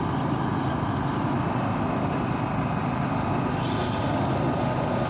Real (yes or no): yes